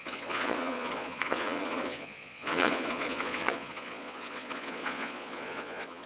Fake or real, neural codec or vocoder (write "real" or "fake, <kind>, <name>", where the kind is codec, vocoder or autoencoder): fake, vocoder, Vocos